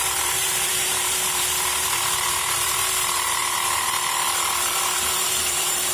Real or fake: fake